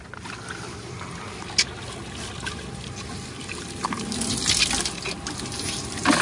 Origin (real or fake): real